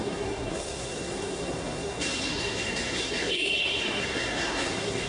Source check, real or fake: fake